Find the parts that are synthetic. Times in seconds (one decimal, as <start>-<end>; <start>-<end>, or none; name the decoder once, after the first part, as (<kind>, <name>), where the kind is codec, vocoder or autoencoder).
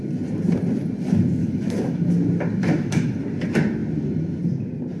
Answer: 1.4-2.1 (autoencoder, DAC-VAE); 2.6-3.2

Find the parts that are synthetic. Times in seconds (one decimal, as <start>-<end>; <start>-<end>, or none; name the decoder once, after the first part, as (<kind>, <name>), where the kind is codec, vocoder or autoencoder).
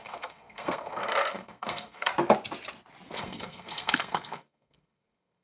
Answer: 0.0-2.1 (codec, SNAC); 3.1-5.4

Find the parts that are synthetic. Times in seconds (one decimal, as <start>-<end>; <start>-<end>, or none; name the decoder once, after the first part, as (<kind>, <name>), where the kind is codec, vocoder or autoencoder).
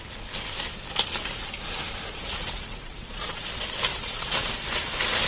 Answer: 2.1-3.4 (vocoder, WaveNeXt); 3.9-4.5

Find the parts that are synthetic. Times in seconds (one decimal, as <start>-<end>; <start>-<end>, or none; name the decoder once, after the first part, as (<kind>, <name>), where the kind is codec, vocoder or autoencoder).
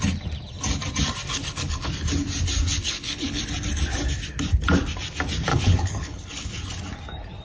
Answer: 1.3-1.9 (codec, HILCodec); 2.8-3.4; 5.5-6.7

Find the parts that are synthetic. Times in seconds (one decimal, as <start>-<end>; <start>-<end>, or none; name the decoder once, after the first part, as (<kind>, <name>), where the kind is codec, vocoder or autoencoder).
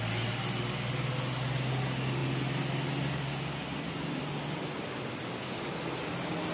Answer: none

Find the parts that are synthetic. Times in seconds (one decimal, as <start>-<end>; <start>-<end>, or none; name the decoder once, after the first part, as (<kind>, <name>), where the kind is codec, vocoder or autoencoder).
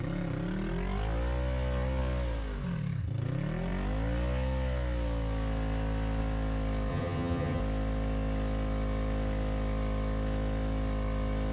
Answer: 6.9-7.6 (vocoder, HiFi-GAN)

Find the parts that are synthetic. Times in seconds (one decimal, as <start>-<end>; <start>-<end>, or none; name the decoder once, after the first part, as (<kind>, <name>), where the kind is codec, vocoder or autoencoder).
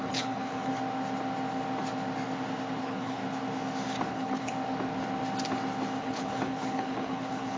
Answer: 0.0-0.7 (codec, HILCodec); 2.8-3.2; 4.1-4.5; 6.0-7.6